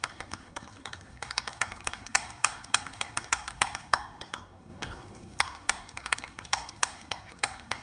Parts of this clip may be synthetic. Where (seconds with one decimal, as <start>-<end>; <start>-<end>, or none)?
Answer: 0.0-7.8